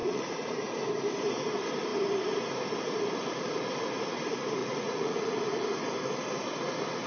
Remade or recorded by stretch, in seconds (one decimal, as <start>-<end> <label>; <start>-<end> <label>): 0.0-0.5 remade; 0.5-4.6 recorded; 4.6-5.3 remade; 5.3-7.1 recorded